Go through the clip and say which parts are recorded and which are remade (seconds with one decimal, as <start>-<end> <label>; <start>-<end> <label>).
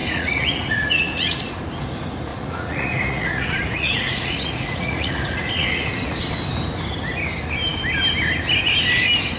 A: 0.0-1.4 remade; 1.4-2.3 recorded; 2.3-6.2 remade; 6.2-9.4 recorded